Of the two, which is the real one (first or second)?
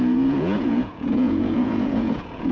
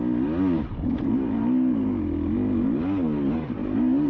second